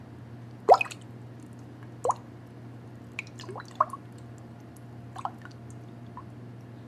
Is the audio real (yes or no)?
yes